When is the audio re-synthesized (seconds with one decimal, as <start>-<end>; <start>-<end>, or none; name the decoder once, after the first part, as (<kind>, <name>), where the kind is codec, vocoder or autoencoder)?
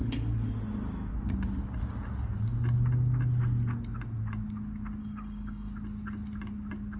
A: 5.0-5.7 (codec, DAC)